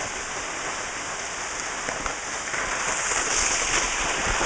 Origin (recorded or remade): recorded